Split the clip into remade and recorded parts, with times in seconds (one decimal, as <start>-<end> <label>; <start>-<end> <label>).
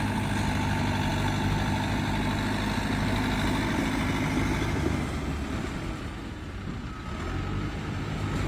0.0-8.5 recorded